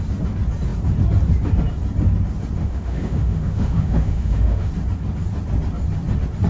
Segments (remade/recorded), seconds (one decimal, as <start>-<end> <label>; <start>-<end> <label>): 0.0-2.6 recorded; 2.6-4.7 remade; 4.7-6.5 recorded